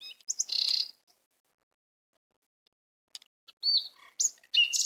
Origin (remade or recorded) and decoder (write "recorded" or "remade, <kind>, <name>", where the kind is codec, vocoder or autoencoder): recorded